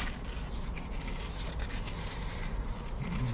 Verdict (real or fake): real